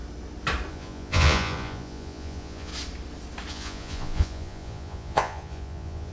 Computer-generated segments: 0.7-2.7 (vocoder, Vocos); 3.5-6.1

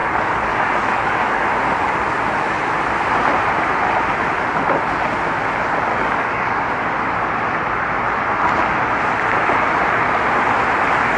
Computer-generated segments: 0.0-1.5 (codec, DAC); 5.9-6.7

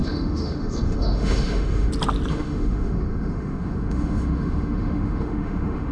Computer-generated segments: 0.0-1.9 (autoencoder, DAC-VAE); 2.3-5.9